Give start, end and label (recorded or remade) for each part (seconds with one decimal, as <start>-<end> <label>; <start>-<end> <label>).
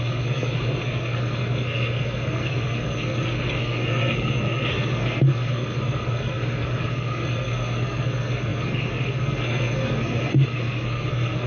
0.0-11.5 remade